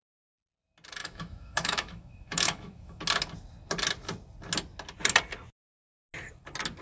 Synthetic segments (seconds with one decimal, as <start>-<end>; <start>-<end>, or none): 1.0-3.0